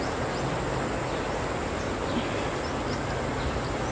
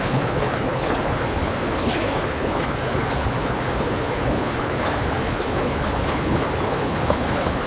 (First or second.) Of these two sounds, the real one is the first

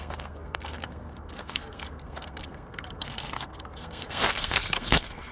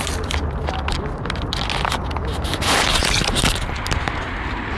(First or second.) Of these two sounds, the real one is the second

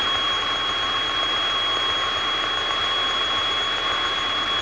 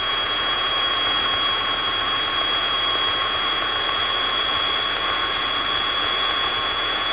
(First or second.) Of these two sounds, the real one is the first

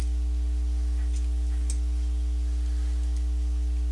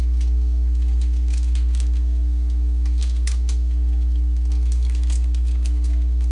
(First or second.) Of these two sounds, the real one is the first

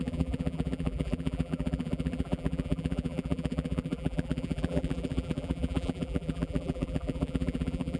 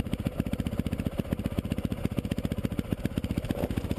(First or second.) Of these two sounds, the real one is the second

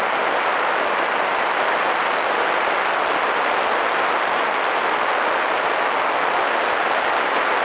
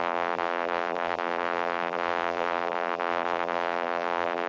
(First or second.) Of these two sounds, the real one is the first